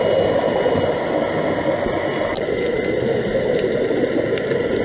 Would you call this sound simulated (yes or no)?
no